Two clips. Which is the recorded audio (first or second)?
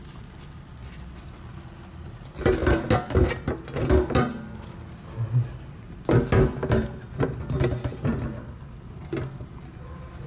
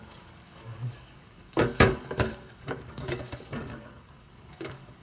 first